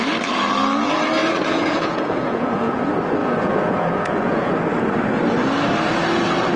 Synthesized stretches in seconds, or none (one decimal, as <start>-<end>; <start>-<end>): 1.2-2.8; 3.2-4.5